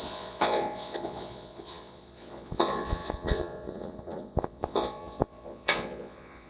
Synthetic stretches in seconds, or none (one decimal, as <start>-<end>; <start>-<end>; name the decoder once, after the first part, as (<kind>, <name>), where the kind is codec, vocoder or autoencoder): 0.0-6.5 (vocoder, Vocos)